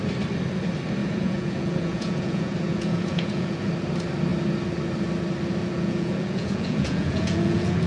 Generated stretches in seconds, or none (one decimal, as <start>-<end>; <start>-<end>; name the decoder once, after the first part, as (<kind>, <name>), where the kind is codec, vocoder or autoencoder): 1.0-3.7 (vocoder, Vocos); 5.6-7.9